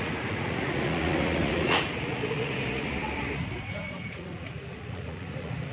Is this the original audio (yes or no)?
no